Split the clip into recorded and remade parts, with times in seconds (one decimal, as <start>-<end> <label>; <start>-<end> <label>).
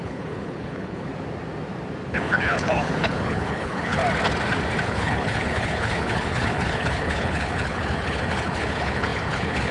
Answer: 0.0-1.1 remade; 1.1-2.1 recorded; 2.1-4.0 remade; 4.0-4.8 recorded; 4.8-9.7 remade